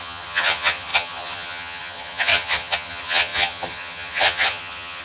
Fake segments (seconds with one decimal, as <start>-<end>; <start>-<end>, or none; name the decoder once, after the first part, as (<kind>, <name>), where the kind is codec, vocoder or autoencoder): 0.0-5.0 (vocoder, HiFi-GAN)